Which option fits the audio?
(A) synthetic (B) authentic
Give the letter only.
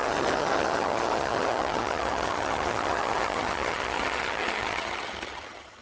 A